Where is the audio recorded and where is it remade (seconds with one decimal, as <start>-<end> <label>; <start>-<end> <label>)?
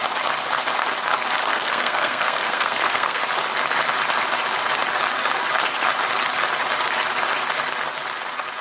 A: 0.0-1.4 recorded; 1.4-3.2 remade; 3.2-8.6 recorded